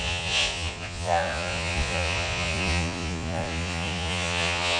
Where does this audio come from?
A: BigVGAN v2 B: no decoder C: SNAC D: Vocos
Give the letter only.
D